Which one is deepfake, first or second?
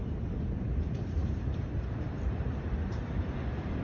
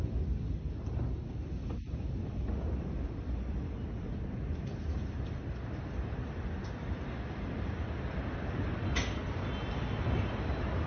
first